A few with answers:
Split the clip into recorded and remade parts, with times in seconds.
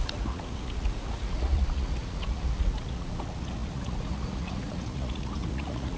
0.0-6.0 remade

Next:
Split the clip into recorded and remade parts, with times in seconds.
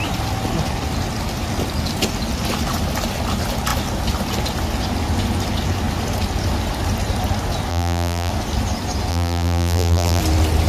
0.0-7.7 recorded; 7.7-8.3 remade; 8.3-9.1 recorded; 9.1-10.2 remade; 10.2-10.7 recorded